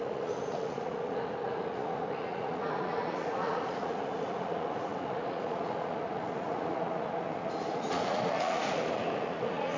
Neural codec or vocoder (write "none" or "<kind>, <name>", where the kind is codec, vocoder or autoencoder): vocoder, Vocos